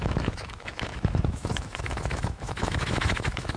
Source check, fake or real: fake